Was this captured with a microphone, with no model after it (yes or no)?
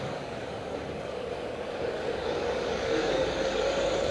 no